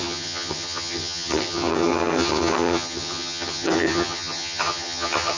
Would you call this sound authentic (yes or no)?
no